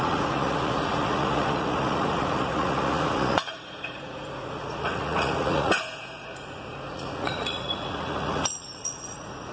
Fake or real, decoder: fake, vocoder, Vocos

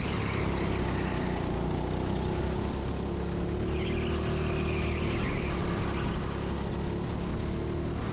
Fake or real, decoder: real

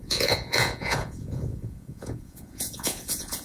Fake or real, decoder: fake, vocoder, Vocos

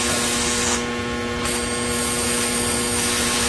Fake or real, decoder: real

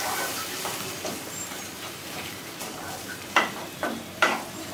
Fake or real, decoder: fake, vocoder, BigVGAN v2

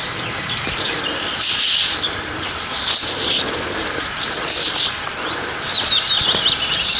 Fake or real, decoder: real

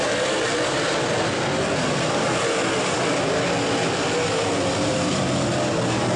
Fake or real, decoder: real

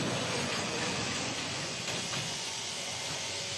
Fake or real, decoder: fake, vocoder, Vocos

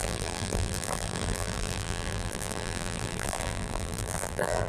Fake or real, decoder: fake, vocoder, BigVGAN v2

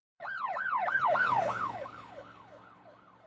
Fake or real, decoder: fake, codec, HILCodec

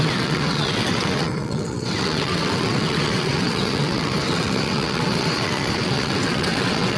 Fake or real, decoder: fake, vocoder, WaveNeXt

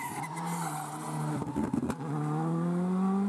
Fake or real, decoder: real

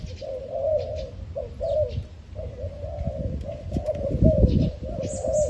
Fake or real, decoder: real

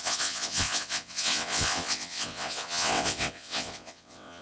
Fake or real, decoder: fake, vocoder, WaveNeXt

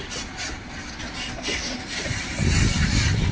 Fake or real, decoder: real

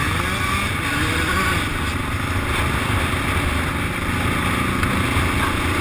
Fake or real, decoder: real